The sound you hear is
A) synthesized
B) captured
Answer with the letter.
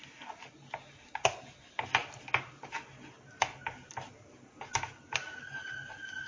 B